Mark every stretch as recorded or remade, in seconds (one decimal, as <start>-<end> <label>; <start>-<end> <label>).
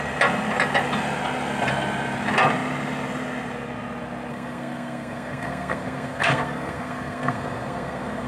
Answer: 0.0-4.3 recorded; 4.3-8.3 remade